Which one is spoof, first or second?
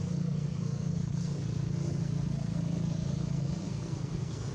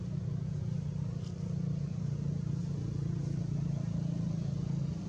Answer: first